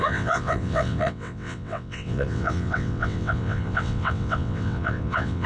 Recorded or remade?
remade